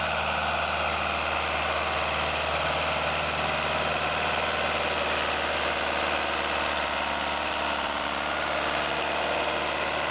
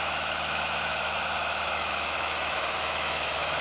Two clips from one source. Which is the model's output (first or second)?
second